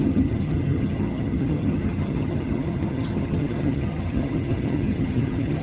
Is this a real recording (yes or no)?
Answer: no